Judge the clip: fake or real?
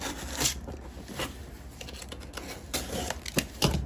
real